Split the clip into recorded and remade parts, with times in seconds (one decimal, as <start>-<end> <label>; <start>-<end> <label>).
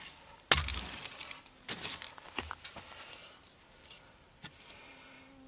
0.0-5.5 recorded